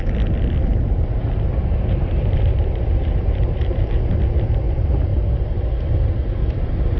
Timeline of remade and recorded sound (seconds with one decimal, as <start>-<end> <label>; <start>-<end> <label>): 0.0-0.7 recorded; 0.7-4.1 remade; 4.1-7.0 recorded